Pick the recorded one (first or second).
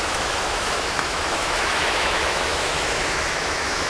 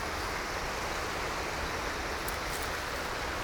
second